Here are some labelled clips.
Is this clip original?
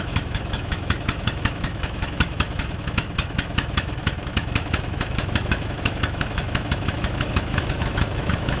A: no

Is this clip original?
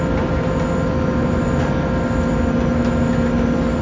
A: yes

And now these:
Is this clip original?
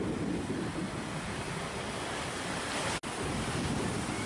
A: yes